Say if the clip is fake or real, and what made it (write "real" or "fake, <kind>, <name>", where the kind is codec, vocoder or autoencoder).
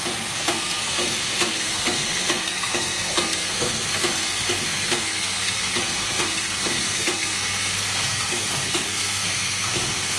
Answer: fake, codec, SNAC